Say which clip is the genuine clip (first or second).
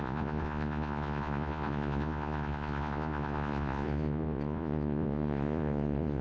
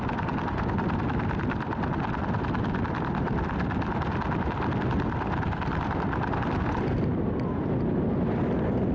second